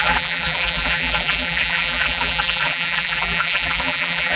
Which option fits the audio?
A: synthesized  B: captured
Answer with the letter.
A